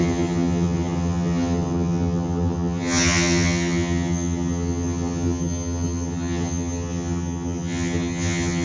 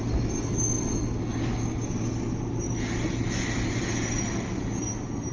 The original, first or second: second